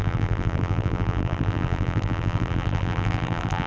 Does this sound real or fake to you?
fake